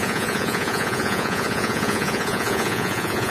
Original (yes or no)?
no